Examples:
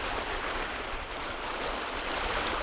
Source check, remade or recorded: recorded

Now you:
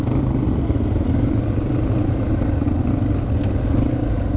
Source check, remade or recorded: recorded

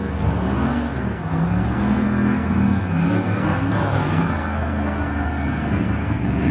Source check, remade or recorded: remade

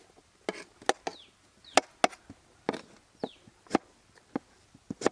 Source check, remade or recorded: recorded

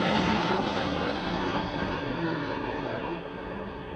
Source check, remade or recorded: remade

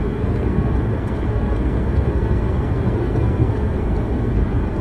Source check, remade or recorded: remade